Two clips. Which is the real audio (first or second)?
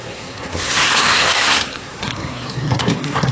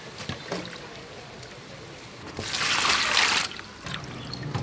second